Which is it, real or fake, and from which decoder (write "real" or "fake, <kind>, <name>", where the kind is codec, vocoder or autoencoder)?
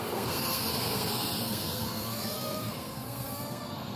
fake, codec, SNAC